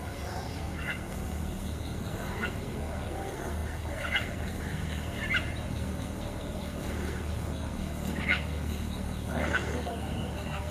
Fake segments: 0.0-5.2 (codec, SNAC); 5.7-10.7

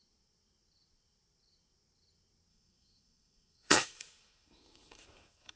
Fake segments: 2.5-5.6 (autoencoder, DAC-VAE)